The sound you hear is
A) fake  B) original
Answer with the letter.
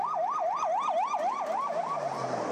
B